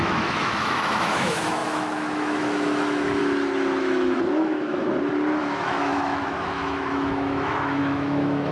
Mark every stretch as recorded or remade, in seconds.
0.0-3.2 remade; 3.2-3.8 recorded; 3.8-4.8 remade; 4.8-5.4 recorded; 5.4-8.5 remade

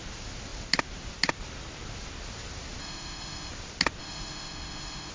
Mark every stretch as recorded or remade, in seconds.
0.0-2.8 recorded; 2.8-3.5 remade; 3.5-4.0 recorded; 4.0-5.1 remade

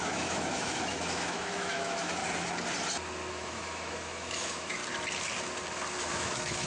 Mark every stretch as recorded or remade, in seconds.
0.0-2.2 remade; 2.2-3.3 recorded; 3.3-4.8 remade; 4.8-6.0 recorded; 6.0-6.7 remade

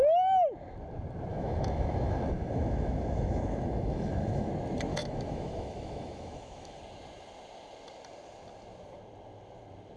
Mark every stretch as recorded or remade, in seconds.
0.0-1.3 recorded; 1.3-4.5 remade; 4.5-4.9 recorded; 4.9-6.8 remade; 6.8-10.0 recorded

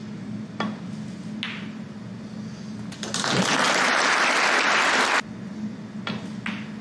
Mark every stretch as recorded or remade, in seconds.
0.0-6.8 recorded

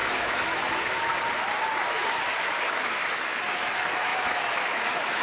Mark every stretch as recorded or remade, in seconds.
0.0-1.1 remade; 1.1-1.9 recorded; 1.9-5.2 remade

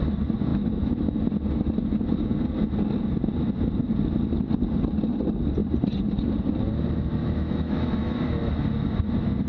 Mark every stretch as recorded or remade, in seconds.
0.0-0.5 recorded; 0.5-1.2 remade; 1.2-7.2 recorded; 7.2-8.1 remade; 8.1-9.5 recorded